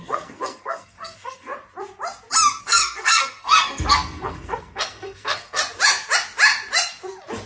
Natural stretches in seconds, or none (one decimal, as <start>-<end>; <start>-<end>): 1.5-2.6; 5.6-7.5